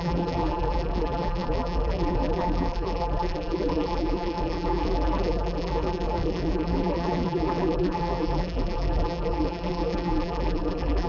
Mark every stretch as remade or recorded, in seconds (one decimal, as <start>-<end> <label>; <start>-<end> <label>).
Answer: 0.0-11.1 remade